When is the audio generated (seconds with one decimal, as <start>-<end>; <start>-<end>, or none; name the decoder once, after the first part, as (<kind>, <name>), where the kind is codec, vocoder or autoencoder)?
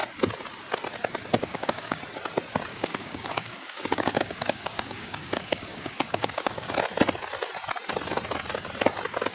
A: 1.4-2.0 (codec, DAC); 2.7-6.7